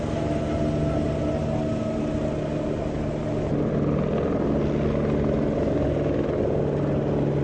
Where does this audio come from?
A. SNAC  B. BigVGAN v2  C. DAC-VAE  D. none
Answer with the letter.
D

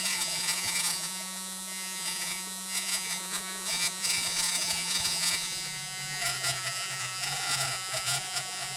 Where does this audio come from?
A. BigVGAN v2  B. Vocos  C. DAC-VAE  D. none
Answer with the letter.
B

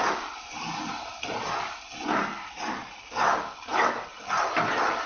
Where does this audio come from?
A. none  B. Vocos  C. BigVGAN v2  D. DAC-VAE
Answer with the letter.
A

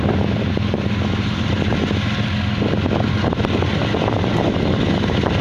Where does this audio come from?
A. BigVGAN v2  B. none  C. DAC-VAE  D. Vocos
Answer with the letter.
B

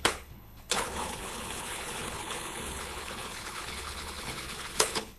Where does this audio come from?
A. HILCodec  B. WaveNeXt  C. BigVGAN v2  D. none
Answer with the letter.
A